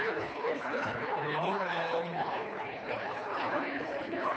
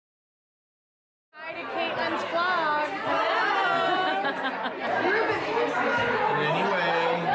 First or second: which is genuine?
second